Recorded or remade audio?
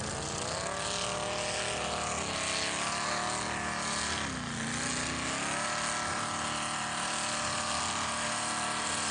recorded